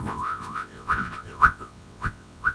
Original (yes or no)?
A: no